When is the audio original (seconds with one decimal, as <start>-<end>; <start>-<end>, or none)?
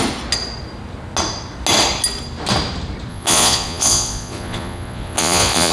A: 0.0-3.1